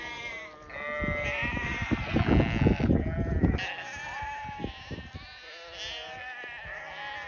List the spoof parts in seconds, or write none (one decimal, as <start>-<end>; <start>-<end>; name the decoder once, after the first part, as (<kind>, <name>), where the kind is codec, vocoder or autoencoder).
none